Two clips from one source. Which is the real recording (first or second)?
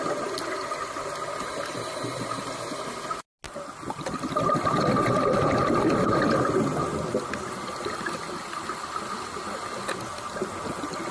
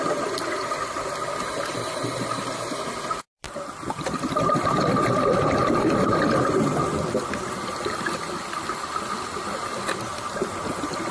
first